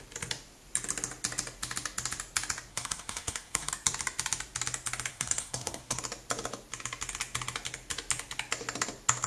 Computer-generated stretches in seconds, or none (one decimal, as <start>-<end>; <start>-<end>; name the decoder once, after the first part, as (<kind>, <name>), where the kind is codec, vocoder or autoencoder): 2.7-3.7 (codec, SNAC); 5.1-6.0